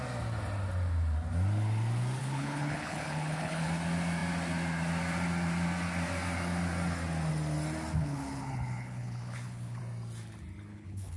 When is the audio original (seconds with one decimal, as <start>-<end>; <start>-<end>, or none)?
0.0-2.2; 3.7-8.0; 9.8-10.7